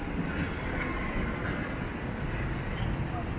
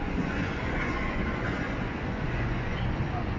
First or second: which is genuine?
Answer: first